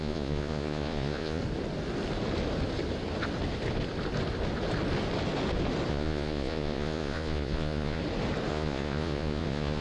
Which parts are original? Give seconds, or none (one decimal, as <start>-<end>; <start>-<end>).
1.4-5.9; 8.0-8.5